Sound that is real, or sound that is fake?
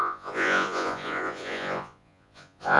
fake